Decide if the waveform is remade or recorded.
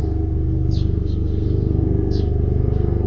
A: remade